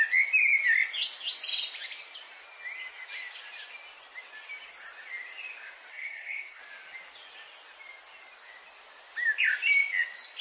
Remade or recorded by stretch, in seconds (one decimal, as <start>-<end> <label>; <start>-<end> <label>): 0.0-5.9 recorded; 5.9-6.6 remade; 6.6-10.4 recorded